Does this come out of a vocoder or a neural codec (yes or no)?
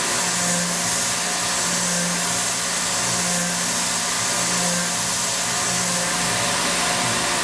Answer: no